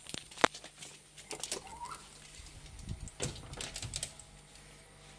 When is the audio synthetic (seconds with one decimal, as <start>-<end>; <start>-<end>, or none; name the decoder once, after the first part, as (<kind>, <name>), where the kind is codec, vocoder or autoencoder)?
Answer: none